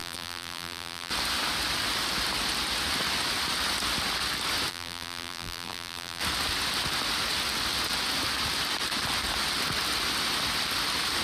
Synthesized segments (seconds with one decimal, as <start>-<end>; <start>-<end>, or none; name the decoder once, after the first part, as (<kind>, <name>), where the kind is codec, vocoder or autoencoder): 0.0-1.1 (vocoder, BigVGAN v2); 4.7-6.2